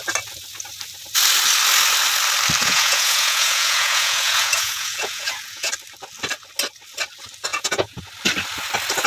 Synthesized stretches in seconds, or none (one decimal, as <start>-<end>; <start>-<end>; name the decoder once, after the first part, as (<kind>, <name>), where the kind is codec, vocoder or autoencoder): 2.6-5.7 (vocoder, Vocos); 7.5-8.0